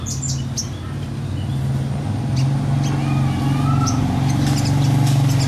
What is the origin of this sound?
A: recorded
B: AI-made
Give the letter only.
A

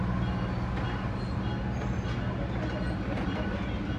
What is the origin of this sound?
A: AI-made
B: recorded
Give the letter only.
B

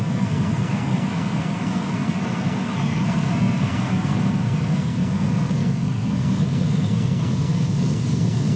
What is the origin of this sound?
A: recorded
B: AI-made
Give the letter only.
B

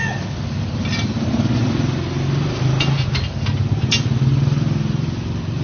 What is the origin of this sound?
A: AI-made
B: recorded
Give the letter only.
B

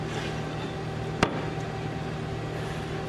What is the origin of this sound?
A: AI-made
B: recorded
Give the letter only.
B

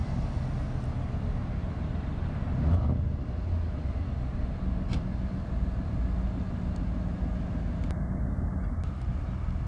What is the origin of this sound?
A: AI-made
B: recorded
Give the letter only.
B